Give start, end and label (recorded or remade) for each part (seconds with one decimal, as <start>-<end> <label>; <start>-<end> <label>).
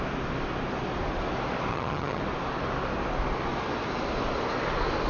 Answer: 0.0-1.7 recorded; 1.7-2.2 remade; 2.2-5.1 recorded